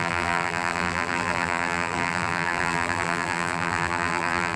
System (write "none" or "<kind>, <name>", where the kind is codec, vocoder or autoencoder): vocoder, BigVGAN v2